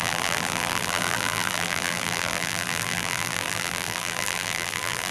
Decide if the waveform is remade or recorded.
remade